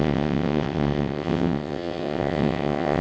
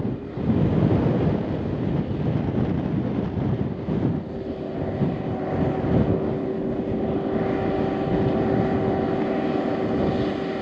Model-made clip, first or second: first